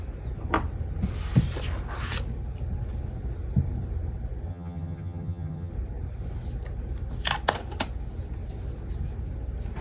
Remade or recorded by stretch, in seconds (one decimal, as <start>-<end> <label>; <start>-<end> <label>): 0.0-4.5 recorded; 4.5-5.7 remade; 5.7-9.8 recorded